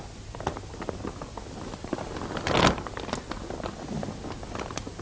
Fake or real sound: real